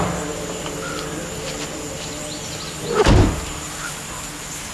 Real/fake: real